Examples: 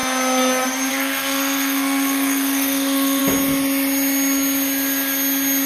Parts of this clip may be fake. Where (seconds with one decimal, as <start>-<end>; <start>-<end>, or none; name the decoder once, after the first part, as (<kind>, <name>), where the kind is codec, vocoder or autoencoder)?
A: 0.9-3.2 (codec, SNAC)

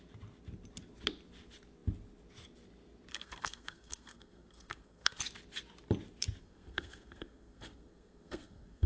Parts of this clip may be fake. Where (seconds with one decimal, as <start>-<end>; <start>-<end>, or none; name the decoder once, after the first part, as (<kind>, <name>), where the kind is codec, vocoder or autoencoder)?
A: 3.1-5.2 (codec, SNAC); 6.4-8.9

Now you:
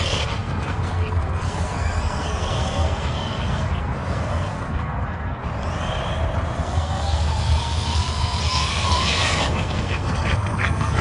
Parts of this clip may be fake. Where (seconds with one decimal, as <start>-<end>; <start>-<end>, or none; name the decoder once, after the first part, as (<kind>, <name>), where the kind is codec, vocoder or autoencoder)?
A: 0.0-5.4 (codec, SNAC); 6.6-11.0

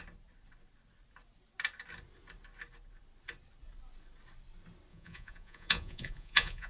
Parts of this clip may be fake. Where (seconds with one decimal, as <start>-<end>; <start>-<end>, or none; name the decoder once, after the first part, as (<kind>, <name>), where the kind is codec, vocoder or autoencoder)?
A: 4.9-6.7 (vocoder, Vocos)